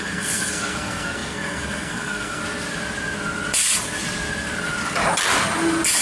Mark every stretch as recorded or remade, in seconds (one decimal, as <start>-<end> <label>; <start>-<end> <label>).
0.0-2.4 remade; 2.4-6.0 recorded